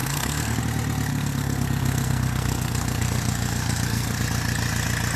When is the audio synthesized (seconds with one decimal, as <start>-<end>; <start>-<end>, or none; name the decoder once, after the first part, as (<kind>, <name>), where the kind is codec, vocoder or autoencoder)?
0.0-0.6 (codec, SNAC); 1.1-4.2